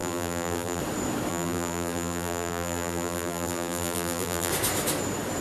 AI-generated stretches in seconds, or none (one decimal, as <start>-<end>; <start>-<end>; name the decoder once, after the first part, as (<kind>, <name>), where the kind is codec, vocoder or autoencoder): 0.0-0.8 (vocoder, BigVGAN v2); 1.3-4.5